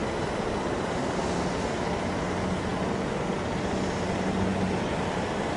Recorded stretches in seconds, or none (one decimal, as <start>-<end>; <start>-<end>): 0.0-5.6